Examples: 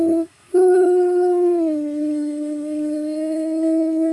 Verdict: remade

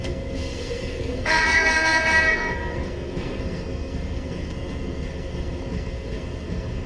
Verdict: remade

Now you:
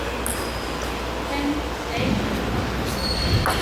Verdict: recorded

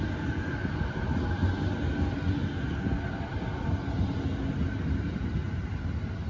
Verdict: recorded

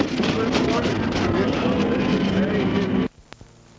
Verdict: recorded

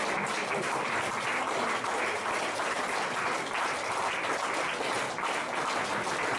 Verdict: recorded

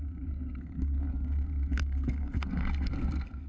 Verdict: remade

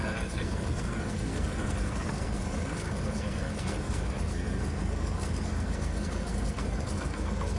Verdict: remade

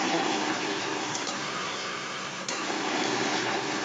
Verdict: remade